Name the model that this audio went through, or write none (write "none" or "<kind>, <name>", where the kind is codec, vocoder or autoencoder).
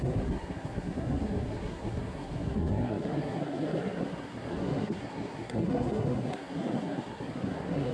codec, SNAC